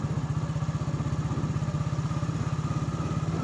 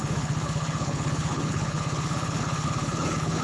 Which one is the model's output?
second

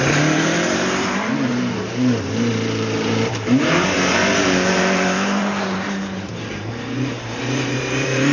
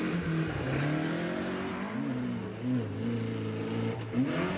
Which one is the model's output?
first